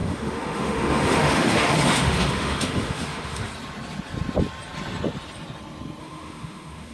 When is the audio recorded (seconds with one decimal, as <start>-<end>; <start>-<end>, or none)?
3.5-6.0